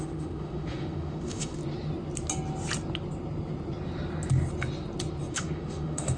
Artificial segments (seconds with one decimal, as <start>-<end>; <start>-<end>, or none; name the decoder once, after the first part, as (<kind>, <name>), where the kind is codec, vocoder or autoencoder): 0.0-1.6 (autoencoder, DAC-VAE); 5.3-6.2